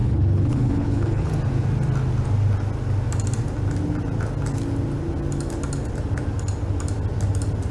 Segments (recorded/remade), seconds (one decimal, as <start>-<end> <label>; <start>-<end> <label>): 0.0-1.3 remade; 1.3-7.7 recorded

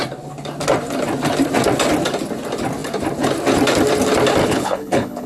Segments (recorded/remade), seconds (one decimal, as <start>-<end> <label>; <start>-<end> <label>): 0.0-4.4 recorded; 4.4-5.3 remade

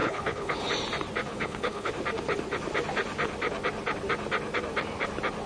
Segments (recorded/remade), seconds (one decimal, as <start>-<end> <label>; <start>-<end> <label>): 0.0-0.7 remade; 0.7-1.3 recorded; 1.3-1.9 remade; 1.9-5.5 recorded

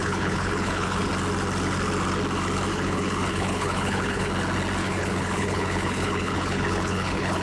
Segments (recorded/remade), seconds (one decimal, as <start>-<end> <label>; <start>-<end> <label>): 0.0-1.1 remade; 1.1-2.7 recorded; 2.7-4.3 remade; 4.3-4.8 recorded; 4.8-7.4 remade

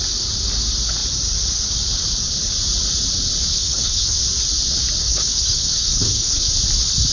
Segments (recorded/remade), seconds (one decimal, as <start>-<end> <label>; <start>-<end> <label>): 0.0-3.5 recorded; 3.5-4.2 remade; 4.2-5.0 recorded; 5.0-6.5 remade; 6.5-7.1 recorded